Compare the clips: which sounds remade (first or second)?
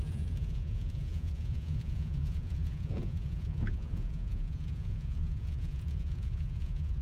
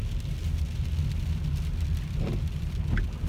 first